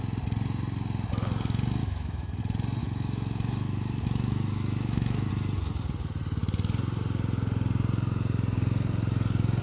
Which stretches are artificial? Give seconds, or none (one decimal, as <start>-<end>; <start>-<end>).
1.8-2.4; 2.8-5.3